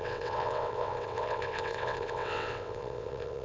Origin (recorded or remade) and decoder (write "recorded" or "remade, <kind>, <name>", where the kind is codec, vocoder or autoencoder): remade, vocoder, WaveNeXt